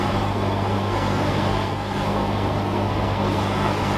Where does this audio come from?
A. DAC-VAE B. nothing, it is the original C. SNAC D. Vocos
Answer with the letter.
C